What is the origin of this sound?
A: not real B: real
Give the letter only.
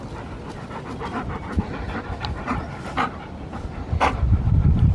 B